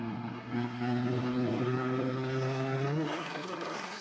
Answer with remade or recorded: remade